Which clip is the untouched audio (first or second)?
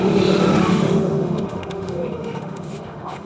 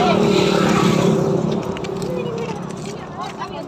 second